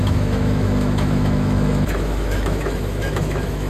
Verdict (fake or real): fake